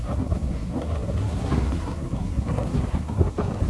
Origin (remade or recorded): remade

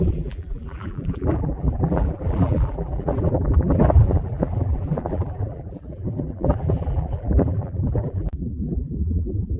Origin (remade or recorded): remade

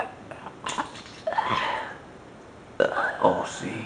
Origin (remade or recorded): recorded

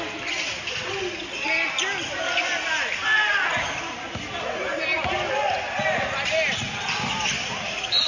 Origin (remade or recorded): recorded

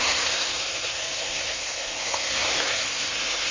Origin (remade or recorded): remade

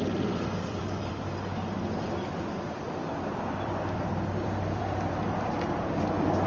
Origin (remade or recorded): remade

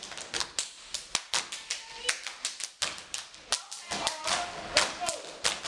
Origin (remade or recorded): recorded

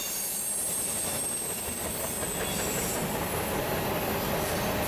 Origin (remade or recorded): recorded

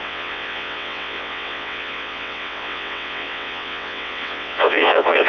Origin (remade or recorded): remade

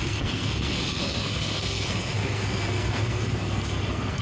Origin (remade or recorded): remade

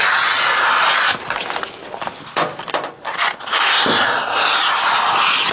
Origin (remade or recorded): recorded